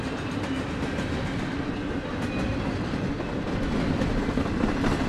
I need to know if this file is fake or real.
real